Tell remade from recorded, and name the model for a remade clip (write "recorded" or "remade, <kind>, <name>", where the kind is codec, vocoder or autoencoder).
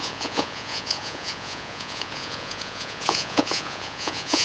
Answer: remade, vocoder, Vocos